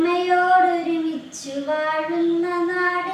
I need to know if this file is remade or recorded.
recorded